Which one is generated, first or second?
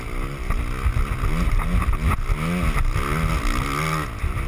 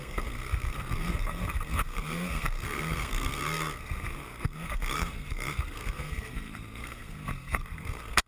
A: second